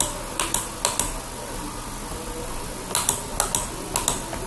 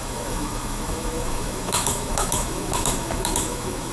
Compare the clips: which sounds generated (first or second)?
second